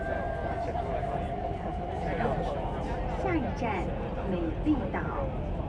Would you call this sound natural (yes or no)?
yes